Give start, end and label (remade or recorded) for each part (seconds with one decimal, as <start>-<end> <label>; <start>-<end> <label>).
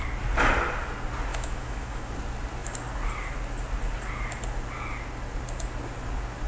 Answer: 0.0-1.3 recorded; 1.3-2.1 remade; 2.1-6.5 recorded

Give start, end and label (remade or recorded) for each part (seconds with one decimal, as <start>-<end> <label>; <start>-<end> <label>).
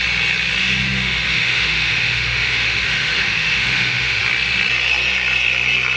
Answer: 0.0-0.6 recorded; 0.6-4.2 remade; 4.2-6.0 recorded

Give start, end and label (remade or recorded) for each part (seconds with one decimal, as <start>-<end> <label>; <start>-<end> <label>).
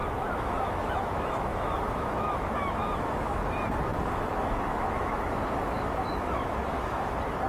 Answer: 0.0-3.5 remade; 3.5-3.9 recorded; 3.9-7.1 remade; 7.1-7.5 recorded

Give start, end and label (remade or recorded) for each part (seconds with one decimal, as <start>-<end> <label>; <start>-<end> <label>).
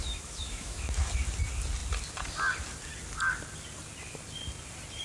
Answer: 0.0-1.1 remade; 1.1-5.0 recorded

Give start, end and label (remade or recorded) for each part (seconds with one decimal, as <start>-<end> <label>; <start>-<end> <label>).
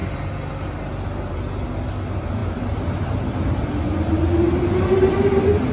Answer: 0.0-5.7 recorded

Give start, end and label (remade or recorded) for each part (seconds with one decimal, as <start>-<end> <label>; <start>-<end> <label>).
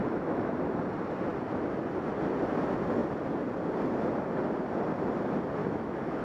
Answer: 0.0-0.5 remade; 0.5-5.6 recorded; 5.6-6.2 remade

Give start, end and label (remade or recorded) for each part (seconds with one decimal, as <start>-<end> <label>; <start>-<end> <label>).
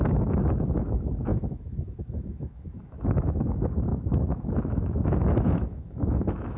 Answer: 0.0-6.6 remade